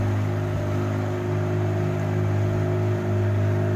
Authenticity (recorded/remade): recorded